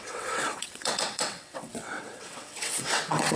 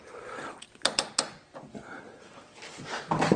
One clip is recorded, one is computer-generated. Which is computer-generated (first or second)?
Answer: first